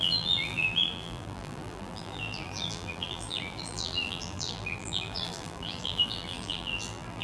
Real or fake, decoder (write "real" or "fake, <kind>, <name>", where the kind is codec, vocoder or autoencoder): fake, vocoder, BigVGAN v2